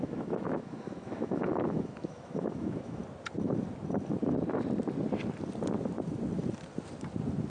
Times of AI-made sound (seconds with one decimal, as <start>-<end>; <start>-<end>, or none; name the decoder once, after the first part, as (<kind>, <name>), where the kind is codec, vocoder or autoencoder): 0.0-3.0 (autoencoder, DAC-VAE)